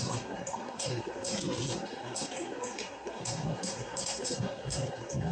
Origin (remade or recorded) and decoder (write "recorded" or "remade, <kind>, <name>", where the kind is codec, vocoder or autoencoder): remade, codec, SNAC